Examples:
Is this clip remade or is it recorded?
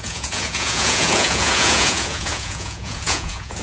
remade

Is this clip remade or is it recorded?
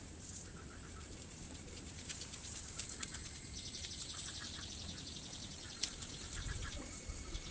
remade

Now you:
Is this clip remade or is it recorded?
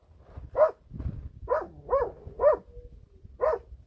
recorded